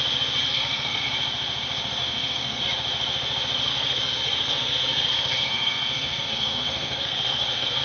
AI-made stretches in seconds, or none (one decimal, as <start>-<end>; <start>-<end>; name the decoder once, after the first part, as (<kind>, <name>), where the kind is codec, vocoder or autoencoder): 0.4-1.1 (codec, SNAC); 2.0-2.6; 3.7-7.8